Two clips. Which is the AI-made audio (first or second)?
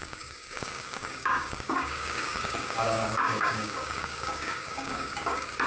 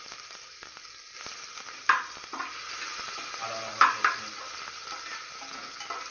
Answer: first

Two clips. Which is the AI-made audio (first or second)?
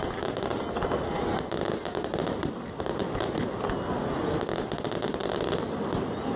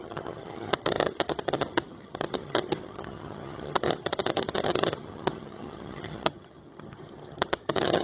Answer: second